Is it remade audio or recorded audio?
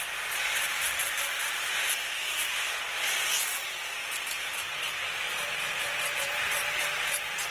recorded